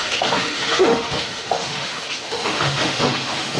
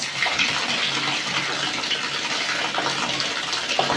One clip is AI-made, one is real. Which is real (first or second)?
second